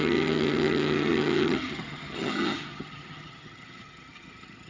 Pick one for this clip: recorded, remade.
remade